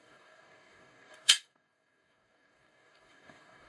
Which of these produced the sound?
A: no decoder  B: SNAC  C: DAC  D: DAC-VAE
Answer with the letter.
C